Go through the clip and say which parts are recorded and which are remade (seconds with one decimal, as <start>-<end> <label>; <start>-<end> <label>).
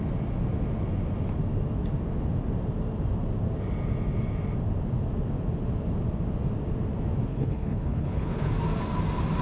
0.0-7.3 recorded; 7.3-8.5 remade; 8.5-9.4 recorded